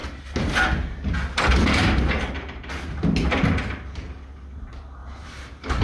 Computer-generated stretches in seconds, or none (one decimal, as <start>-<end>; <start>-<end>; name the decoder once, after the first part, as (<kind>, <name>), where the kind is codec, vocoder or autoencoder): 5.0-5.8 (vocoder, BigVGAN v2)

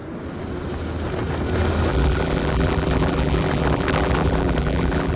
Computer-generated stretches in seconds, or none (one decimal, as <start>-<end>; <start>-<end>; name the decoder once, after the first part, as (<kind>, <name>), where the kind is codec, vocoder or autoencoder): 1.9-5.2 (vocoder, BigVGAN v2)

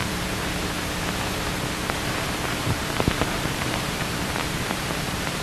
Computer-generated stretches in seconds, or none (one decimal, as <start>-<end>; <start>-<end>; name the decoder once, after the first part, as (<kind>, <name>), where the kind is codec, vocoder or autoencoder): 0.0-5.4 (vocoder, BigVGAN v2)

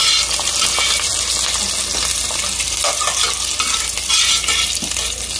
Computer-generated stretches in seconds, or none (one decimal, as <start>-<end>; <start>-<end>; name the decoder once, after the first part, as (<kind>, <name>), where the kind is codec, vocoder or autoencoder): none

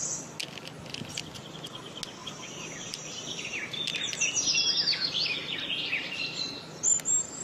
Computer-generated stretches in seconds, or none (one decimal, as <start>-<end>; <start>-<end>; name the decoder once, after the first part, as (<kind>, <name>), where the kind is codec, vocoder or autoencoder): 2.2-4.1 (vocoder, BigVGAN v2); 5.4-6.3